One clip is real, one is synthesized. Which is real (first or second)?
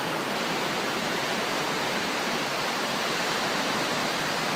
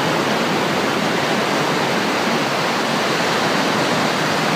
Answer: second